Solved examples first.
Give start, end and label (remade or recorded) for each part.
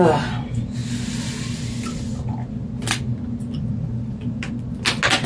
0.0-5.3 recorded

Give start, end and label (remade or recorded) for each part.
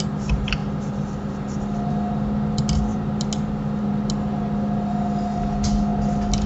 0.0-6.5 recorded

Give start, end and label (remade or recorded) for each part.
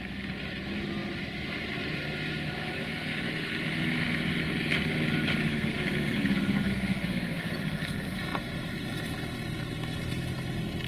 0.0-5.5 recorded; 5.5-7.5 remade; 7.5-10.9 recorded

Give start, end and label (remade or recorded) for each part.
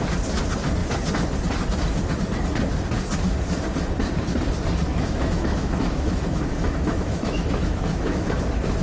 0.0-4.9 recorded; 4.9-8.4 remade; 8.4-8.8 recorded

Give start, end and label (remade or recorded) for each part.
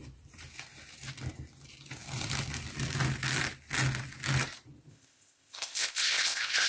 0.0-4.9 recorded; 4.9-6.7 remade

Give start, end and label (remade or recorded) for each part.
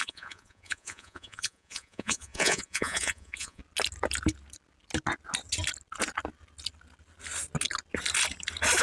0.0-3.6 remade; 3.6-8.8 recorded